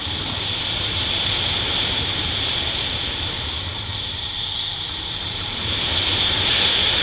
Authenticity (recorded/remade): remade